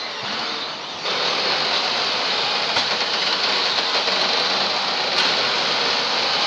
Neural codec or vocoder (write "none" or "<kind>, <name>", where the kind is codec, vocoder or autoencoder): none